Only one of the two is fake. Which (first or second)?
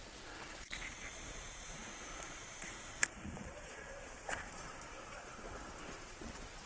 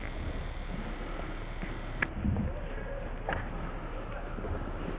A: first